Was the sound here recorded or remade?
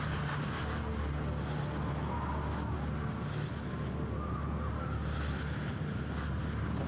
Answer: recorded